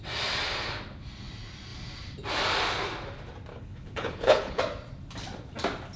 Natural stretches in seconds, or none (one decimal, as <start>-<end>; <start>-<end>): 0.0-3.5; 4.6-6.0